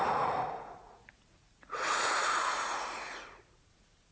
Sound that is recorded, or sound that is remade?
remade